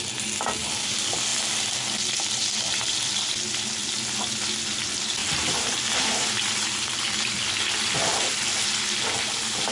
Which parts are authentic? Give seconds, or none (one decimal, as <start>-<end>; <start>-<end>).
0.0-5.2; 7.3-9.7